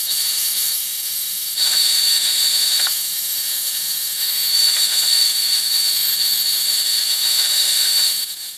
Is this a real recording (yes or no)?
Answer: no